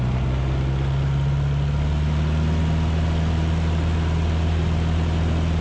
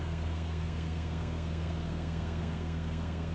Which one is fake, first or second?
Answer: second